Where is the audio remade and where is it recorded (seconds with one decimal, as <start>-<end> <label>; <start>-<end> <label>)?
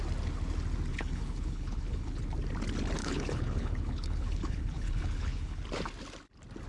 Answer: 0.0-0.9 recorded; 0.9-2.2 remade; 2.2-3.0 recorded; 3.0-5.6 remade; 5.6-6.7 recorded